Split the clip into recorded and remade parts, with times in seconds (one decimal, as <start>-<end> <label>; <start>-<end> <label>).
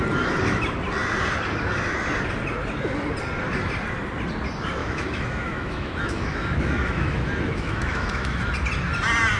0.0-4.8 recorded; 4.8-8.5 remade; 8.5-9.4 recorded